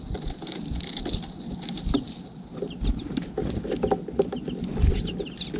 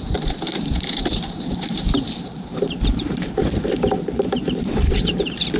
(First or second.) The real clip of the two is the first